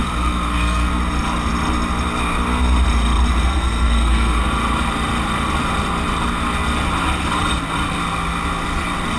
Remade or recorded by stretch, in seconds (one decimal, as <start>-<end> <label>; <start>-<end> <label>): 0.0-0.9 remade; 0.9-3.5 recorded; 3.5-4.4 remade; 4.4-9.2 recorded